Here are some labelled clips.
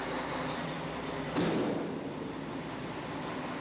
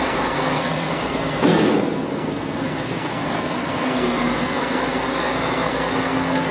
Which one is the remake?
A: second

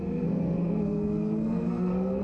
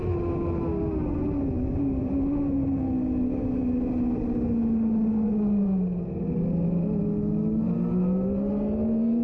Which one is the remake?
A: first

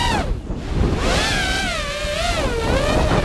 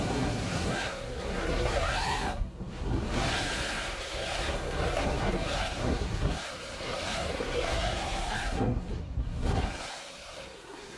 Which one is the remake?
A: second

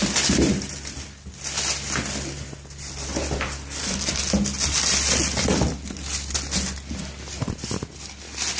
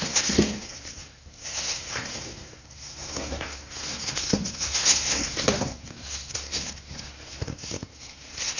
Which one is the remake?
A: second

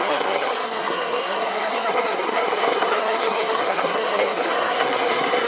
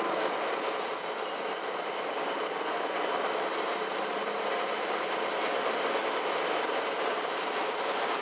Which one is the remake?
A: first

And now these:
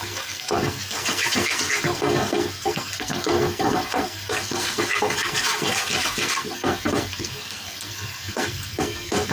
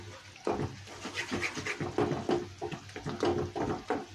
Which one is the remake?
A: first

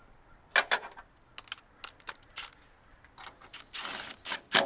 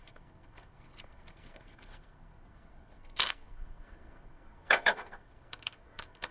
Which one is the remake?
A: second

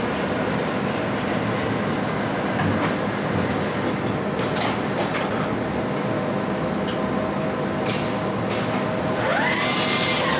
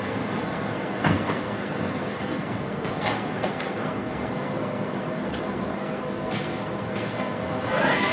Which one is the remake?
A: second